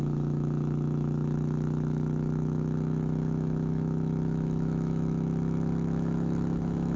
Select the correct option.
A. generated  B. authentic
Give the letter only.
A